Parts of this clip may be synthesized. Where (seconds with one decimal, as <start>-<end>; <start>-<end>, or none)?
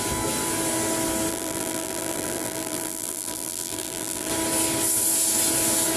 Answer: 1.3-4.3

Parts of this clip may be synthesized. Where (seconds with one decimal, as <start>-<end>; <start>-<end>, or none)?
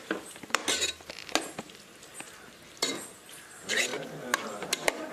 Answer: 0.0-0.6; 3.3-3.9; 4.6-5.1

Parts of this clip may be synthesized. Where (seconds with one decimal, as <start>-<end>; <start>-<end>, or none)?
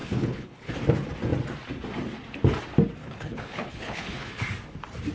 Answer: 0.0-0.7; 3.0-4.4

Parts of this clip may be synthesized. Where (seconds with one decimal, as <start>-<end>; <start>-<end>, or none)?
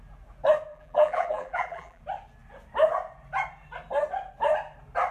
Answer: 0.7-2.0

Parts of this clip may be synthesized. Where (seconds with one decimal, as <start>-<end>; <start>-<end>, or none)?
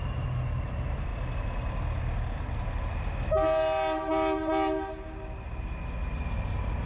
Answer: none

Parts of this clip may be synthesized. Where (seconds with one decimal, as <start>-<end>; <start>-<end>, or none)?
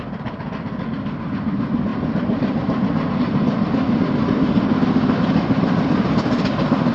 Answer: none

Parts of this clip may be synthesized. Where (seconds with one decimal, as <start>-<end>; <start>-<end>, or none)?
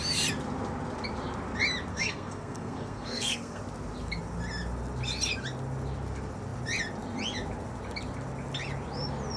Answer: 1.9-3.6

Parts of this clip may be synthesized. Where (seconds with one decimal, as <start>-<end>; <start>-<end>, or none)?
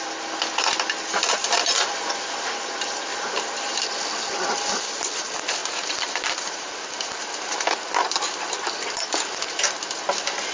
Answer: 3.1-3.8; 5.6-7.6